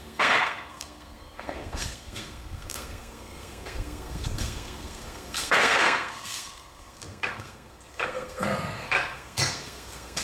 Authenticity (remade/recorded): remade